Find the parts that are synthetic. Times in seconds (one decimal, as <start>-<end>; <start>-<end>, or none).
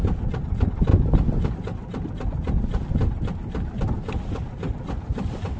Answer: none